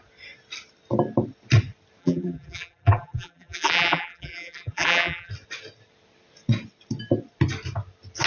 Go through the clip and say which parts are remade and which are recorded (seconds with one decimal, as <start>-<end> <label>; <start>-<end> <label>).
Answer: 0.0-2.0 recorded; 2.0-5.3 remade; 5.3-8.3 recorded